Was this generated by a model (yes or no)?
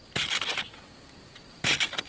no